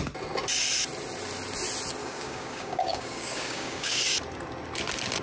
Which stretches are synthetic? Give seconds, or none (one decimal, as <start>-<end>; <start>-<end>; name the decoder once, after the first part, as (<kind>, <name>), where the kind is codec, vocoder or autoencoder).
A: 2.0-4.0 (codec, DAC)